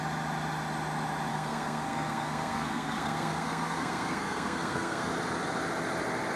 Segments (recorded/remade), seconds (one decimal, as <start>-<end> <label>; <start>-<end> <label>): 0.0-1.3 recorded; 1.3-5.1 remade; 5.1-6.4 recorded